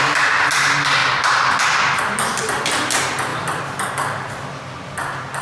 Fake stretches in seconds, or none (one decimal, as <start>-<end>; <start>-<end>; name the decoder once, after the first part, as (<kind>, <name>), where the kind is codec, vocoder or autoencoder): none